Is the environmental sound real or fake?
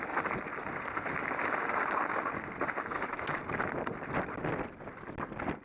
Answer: real